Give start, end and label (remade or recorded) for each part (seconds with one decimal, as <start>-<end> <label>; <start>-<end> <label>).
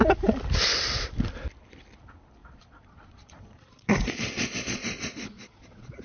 0.0-2.4 recorded; 2.4-6.0 remade